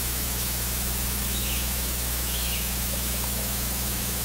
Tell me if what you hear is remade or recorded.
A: remade